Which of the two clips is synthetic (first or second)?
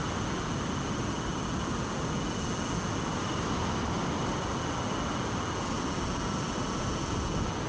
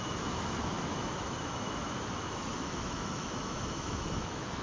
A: second